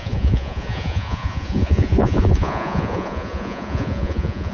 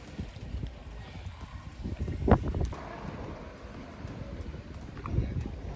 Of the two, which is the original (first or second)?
second